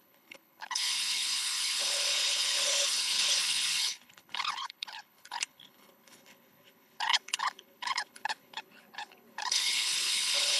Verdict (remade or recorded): remade